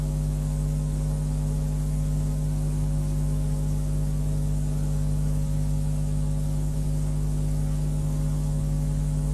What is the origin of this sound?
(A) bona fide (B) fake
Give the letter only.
B